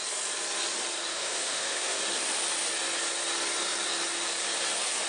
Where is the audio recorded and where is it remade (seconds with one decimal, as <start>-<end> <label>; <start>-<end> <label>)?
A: 0.0-1.1 recorded; 1.1-2.0 remade; 2.0-5.1 recorded